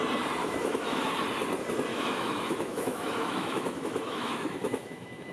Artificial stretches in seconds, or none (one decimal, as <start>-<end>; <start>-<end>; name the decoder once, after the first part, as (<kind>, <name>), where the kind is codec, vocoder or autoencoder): 0.4-1.1 (autoencoder, DAC-VAE); 1.9-5.3